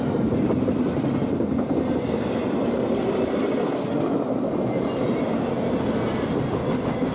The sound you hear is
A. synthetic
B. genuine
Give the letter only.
B